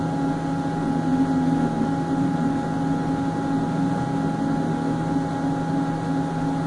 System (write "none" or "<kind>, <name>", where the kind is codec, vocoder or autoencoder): none